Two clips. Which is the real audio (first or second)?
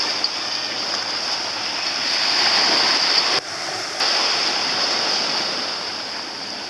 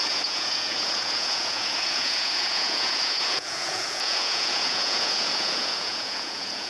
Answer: first